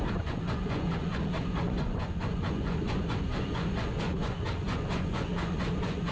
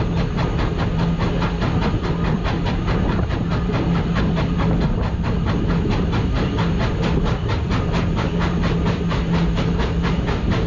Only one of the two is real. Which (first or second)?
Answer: second